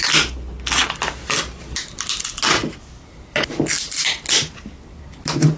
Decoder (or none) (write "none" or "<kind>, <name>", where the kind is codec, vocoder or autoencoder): none